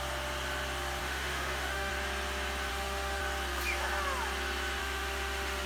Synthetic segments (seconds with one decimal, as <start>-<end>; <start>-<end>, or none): 1.0-1.9; 2.7-3.2; 4.8-5.7